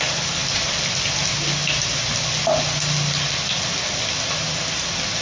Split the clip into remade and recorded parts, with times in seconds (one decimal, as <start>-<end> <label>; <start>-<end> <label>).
0.0-5.2 recorded